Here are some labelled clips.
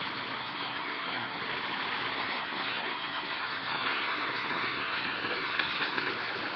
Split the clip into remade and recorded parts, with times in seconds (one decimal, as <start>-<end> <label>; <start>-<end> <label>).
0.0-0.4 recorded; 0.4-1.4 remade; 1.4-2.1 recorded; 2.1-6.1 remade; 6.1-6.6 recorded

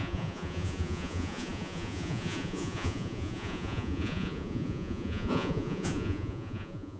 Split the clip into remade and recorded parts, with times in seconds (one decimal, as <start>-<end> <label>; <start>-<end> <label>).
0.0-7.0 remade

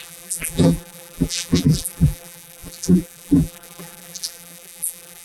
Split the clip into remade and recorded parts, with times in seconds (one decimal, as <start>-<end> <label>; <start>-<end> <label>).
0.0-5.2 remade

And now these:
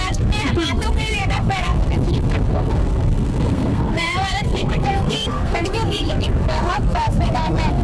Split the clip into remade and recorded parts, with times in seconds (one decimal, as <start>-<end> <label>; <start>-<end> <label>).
0.0-7.8 remade